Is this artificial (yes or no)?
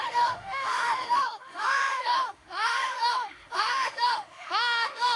yes